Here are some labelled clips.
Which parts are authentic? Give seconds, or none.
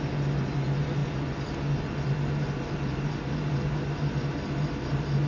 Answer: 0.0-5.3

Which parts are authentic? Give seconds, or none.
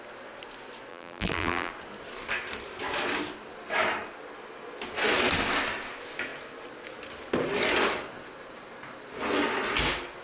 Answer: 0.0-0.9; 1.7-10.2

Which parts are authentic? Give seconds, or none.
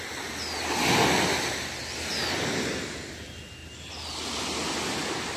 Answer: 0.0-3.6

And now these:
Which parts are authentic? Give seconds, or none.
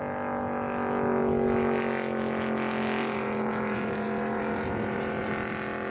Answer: 0.0-3.0; 5.3-5.9